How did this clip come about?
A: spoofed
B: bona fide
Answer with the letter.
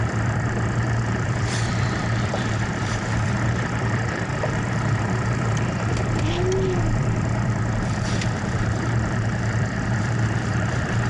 A